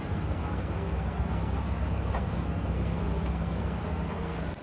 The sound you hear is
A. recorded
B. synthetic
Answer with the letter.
B